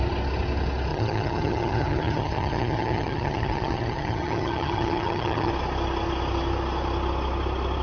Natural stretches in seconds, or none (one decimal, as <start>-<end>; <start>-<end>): 0.0-0.9; 5.5-7.8